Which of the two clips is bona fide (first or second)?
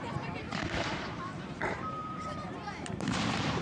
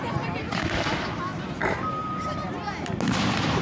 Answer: second